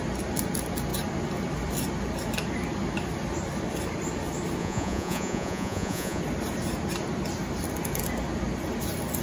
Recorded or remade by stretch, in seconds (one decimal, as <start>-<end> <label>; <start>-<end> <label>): 0.0-4.6 recorded; 4.6-6.2 remade; 6.2-9.2 recorded